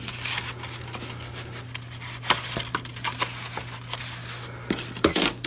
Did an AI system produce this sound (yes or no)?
no